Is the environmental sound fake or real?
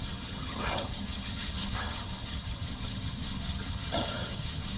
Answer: fake